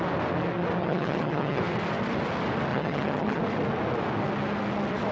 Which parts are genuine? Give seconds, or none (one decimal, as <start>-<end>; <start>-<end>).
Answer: 0.0-0.8; 1.6-2.7; 3.4-5.1